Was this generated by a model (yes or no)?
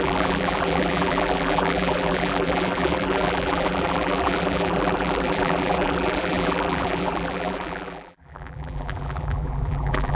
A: yes